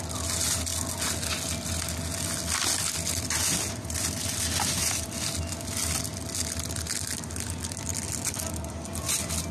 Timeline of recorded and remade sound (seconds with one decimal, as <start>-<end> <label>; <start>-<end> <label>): 0.0-4.8 recorded; 4.8-5.7 remade; 5.7-9.5 recorded